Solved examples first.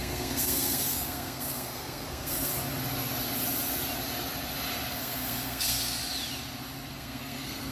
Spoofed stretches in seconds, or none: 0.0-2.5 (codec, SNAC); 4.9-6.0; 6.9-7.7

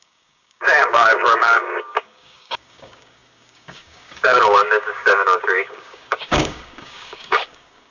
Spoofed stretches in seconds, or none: 0.0-7.9 (codec, DAC)

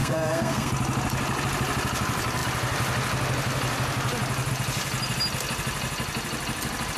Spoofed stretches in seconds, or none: 0.0-0.7 (codec, SNAC)

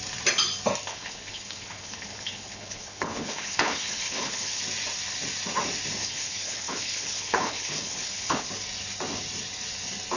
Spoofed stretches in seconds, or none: 0.9-4.6 (codec, HILCodec); 6.0-8.5

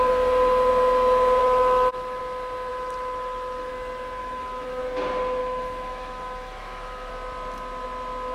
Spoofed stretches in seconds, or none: 1.4-2.2 (autoencoder, DAC-VAE); 2.7-3.7; 4.2-4.8; 5.4-7.1

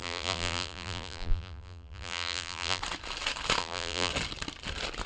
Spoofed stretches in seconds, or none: 0.0-2.8 (vocoder, BigVGAN v2); 3.6-4.1

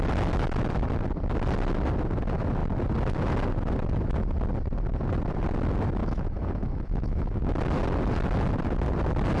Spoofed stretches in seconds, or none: 6.0-7.5 (autoencoder, DAC-VAE)

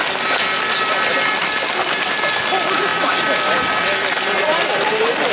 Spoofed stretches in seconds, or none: none